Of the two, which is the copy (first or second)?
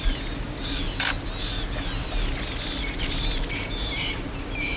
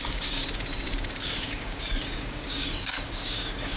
second